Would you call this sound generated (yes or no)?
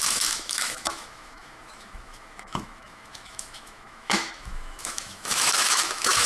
yes